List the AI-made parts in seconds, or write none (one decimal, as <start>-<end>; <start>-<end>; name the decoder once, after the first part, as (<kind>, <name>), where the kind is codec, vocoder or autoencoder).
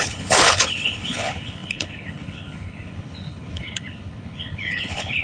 0.0-5.2 (codec, HILCodec)